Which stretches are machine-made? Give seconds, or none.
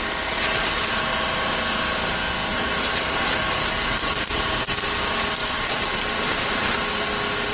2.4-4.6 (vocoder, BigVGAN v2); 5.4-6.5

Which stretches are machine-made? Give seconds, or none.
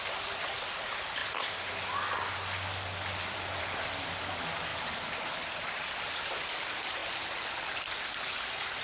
0.0-1.2 (vocoder, BigVGAN v2); 3.6-7.0; 8.0-8.8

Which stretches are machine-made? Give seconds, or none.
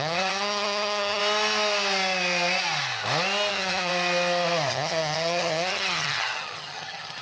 0.0-1.2 (vocoder, HiFi-GAN); 3.5-3.9; 4.7-7.2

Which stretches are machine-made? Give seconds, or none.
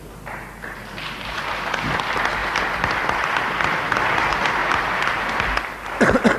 2.4-2.9 (vocoder, BigVGAN v2); 4.6-5.3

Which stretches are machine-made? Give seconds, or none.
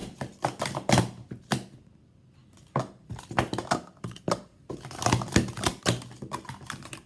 none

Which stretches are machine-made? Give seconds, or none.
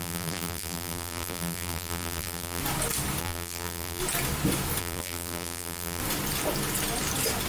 0.0-2.6 (vocoder, BigVGAN v2); 3.2-4.0; 4.8-6.0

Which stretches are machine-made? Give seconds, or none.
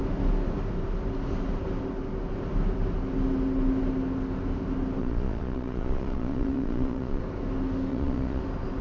5.0-7.2 (vocoder, Vocos); 7.9-8.4